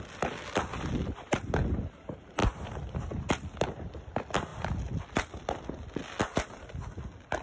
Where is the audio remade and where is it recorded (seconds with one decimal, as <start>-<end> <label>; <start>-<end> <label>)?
0.0-7.4 recorded